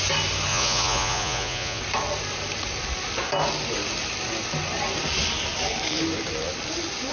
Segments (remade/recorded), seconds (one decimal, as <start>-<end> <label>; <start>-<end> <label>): 0.0-0.5 recorded; 0.5-1.8 remade; 1.8-7.1 recorded

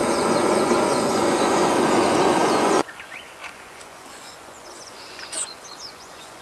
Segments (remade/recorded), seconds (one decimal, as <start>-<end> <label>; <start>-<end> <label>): 0.0-6.4 remade

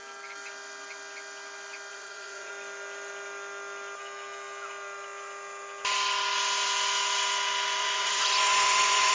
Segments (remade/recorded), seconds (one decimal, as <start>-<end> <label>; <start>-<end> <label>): 0.0-1.9 recorded; 1.9-2.5 remade; 2.5-7.8 recorded; 7.8-9.1 remade

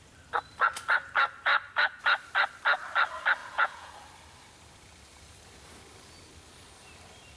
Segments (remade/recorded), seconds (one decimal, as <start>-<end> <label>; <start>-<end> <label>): 0.0-3.4 recorded; 3.4-3.9 remade; 3.9-7.4 recorded

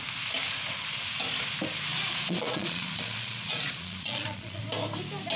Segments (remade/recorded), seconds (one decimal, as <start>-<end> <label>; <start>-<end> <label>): 0.0-1.9 recorded; 1.9-4.6 remade; 4.6-5.4 recorded

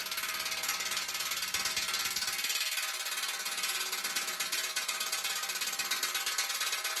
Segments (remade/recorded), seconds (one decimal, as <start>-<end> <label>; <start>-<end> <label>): 0.0-3.3 recorded; 3.3-5.4 remade; 5.4-6.5 recorded; 6.5-7.0 remade